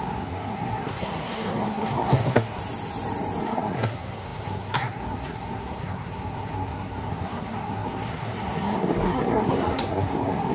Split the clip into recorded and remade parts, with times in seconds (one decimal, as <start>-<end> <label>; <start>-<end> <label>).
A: 0.0-2.6 remade; 2.6-3.4 recorded; 3.4-10.5 remade